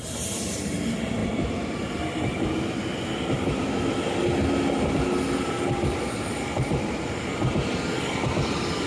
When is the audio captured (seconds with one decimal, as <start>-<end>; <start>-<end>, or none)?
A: 0.0-8.9